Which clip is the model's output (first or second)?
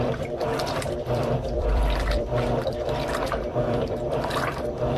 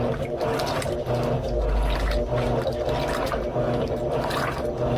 first